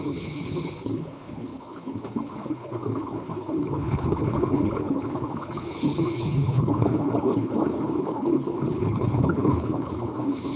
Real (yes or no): no